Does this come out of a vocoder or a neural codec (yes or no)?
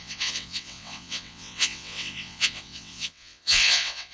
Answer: yes